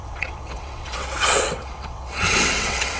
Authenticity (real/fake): fake